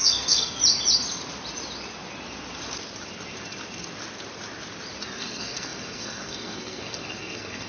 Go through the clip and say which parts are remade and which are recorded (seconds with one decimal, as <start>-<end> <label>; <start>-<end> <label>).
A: 0.0-0.6 remade; 0.6-5.2 recorded; 5.2-7.7 remade